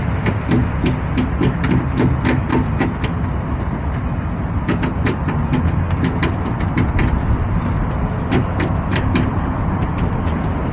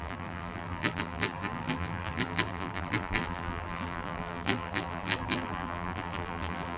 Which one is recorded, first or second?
first